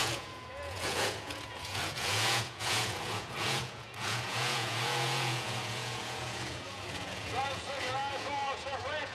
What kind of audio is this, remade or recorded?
remade